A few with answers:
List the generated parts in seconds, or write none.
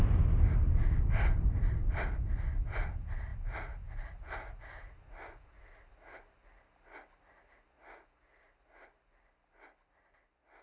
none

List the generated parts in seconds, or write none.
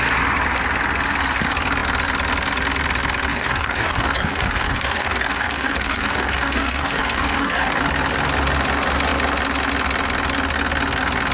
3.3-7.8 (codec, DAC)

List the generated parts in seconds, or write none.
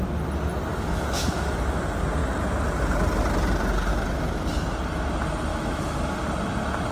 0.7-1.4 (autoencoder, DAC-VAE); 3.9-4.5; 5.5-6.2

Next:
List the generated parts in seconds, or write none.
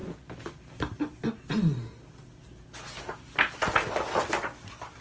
none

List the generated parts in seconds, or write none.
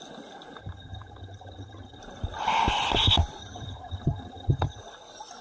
0.6-2.0 (vocoder, HiFi-GAN); 3.4-4.8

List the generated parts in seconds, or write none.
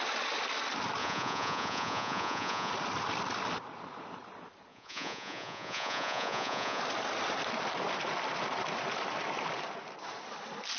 1.0-2.7 (vocoder, Vocos); 4.7-6.8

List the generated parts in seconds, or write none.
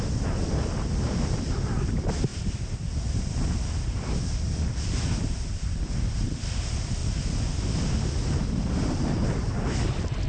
0.0-7.0 (vocoder, BigVGAN v2)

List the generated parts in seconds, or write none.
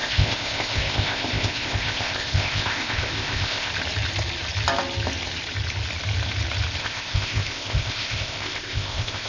0.0-3.7 (codec, ZipCodec); 6.8-9.3